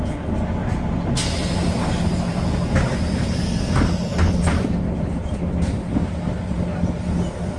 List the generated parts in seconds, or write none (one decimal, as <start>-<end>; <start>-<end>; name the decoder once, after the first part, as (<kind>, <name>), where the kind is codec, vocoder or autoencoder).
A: none